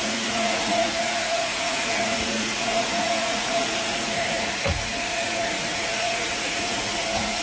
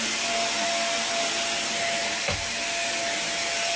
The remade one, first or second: first